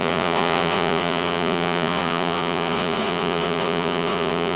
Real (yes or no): no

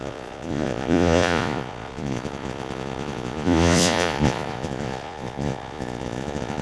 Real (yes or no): no